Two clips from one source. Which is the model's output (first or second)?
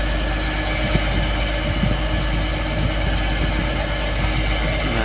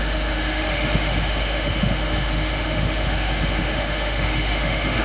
second